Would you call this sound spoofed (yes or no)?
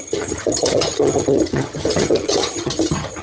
yes